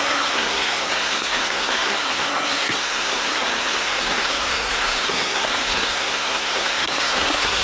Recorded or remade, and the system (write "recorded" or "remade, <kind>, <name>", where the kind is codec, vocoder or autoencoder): remade, codec, SNAC